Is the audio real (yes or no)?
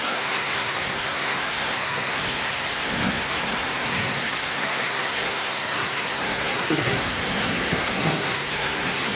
no